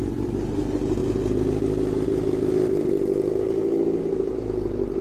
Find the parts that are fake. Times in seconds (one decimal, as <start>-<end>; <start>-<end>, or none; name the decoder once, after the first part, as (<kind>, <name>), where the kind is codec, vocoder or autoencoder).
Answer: 0.0-1.0 (vocoder, BigVGAN v2); 4.0-5.0